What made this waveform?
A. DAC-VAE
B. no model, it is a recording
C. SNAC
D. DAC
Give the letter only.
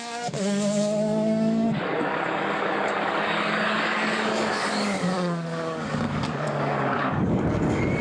D